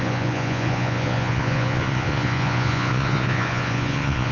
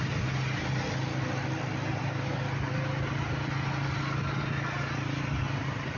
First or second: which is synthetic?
first